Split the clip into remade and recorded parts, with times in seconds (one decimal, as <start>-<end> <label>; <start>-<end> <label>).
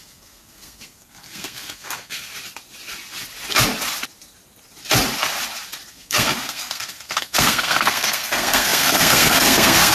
0.0-2.3 remade; 2.3-5.9 recorded; 5.9-9.9 remade